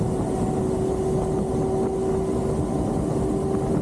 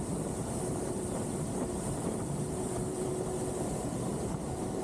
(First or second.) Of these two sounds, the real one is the first